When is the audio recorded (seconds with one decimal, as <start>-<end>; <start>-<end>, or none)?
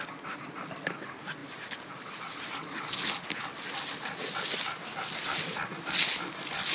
0.0-6.7